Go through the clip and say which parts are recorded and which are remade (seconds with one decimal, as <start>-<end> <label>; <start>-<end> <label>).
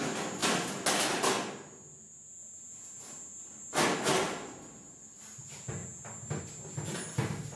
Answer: 0.0-7.6 recorded